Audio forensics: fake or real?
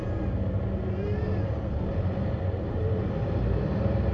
real